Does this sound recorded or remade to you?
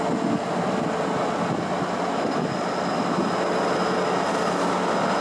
recorded